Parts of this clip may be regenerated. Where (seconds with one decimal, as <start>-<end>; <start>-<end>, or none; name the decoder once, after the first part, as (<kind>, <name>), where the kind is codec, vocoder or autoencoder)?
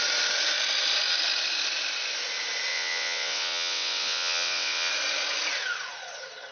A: 2.7-4.9 (vocoder, WaveNeXt)